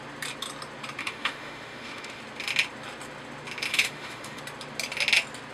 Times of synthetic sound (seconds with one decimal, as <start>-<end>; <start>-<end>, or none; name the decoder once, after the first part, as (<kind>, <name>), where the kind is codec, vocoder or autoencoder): 1.0-2.2 (autoencoder, DAC-VAE); 3.7-4.4